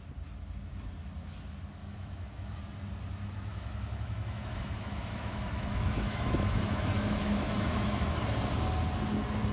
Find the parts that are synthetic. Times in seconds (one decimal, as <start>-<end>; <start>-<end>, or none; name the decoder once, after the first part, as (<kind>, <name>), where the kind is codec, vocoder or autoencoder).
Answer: 1.8-2.6 (autoencoder, DAC-VAE); 3.5-8.2